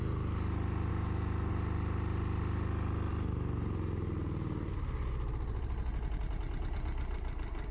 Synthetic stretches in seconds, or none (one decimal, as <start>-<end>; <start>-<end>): 0.9-1.5

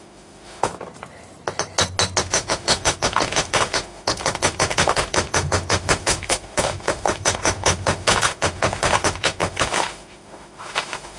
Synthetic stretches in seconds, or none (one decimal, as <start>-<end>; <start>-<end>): 0.0-0.7; 2.2-11.2

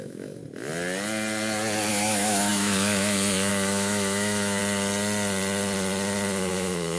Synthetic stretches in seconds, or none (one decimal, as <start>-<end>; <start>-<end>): 0.0-0.4; 1.9-4.6; 6.5-7.0

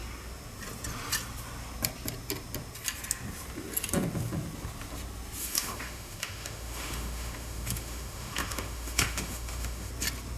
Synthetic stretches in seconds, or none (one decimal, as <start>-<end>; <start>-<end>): 5.4-9.9

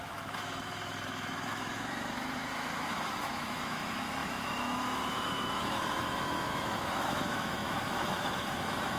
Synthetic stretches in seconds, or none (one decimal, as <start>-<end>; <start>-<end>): 0.0-9.0

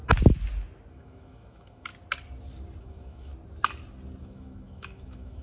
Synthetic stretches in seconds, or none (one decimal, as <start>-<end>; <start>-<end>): 0.9-1.9; 2.8-3.3; 4.2-5.4

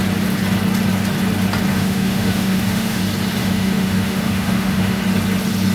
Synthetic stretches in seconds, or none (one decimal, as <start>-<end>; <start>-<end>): 1.7-3.0; 3.4-5.0

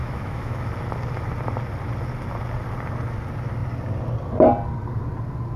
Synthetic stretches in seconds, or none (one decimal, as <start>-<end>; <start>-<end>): 0.0-0.7